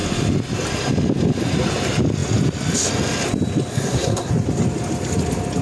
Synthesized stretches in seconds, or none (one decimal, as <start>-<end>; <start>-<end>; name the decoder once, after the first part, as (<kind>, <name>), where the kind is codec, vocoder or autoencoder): 3.7-4.3 (codec, SNAC)